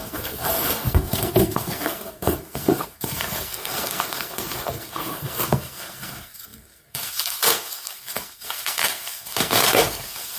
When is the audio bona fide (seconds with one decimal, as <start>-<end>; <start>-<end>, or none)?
none